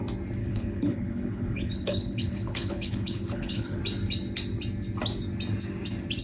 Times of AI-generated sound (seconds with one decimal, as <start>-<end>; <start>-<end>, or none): 0.4-3.8